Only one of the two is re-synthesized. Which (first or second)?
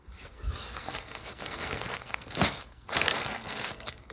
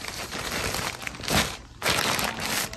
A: first